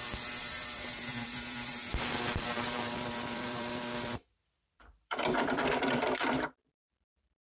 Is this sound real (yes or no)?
no